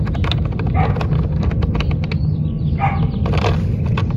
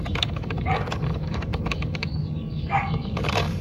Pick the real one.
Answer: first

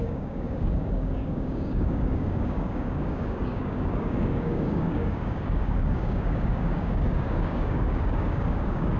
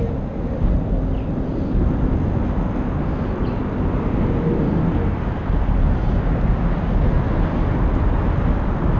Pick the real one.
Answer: second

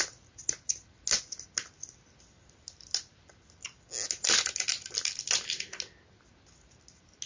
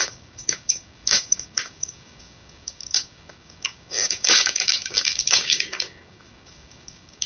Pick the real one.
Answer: first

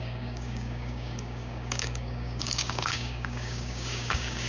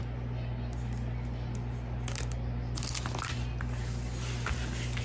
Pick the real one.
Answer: second